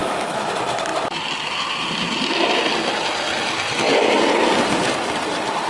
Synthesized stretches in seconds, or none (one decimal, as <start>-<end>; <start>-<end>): 0.0-0.5